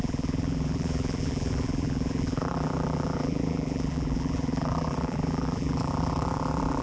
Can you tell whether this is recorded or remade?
remade